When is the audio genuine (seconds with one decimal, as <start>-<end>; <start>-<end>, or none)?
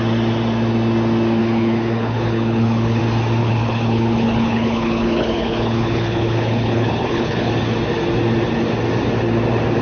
0.0-1.4; 3.0-3.4; 7.5-9.8